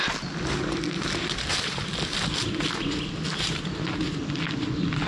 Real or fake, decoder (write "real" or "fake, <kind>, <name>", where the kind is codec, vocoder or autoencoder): real